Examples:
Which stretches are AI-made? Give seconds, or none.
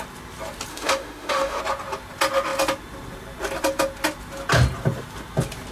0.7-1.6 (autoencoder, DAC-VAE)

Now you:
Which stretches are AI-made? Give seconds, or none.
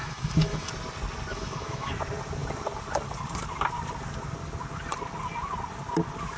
0.0-0.7 (autoencoder, DAC-VAE); 1.3-1.9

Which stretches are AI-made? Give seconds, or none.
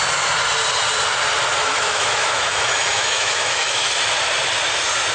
1.6-3.9 (autoencoder, DAC-VAE)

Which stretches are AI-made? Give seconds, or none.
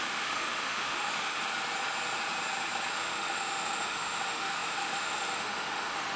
0.0-1.4 (autoencoder, DAC-VAE); 2.9-6.2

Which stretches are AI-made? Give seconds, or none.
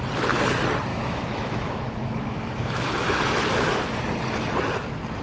0.9-4.0 (autoencoder, DAC-VAE)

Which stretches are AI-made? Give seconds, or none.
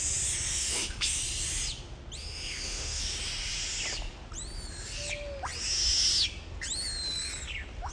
0.5-1.2 (autoencoder, DAC-VAE); 2.2-3.0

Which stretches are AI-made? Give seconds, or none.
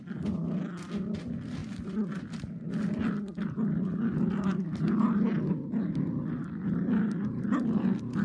none